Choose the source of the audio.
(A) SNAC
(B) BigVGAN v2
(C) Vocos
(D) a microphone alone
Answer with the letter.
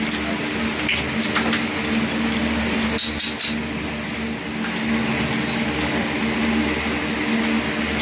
D